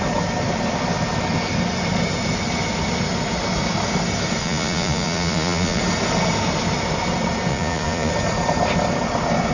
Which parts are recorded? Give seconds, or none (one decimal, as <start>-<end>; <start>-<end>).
0.0-4.4; 5.8-7.5; 8.1-9.5